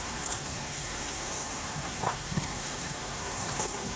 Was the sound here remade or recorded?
remade